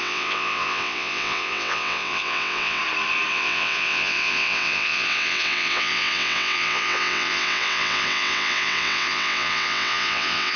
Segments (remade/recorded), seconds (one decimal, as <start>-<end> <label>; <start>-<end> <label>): 0.0-2.8 remade; 2.8-3.3 recorded; 3.3-10.6 remade